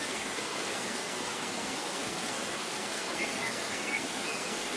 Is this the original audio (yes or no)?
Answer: no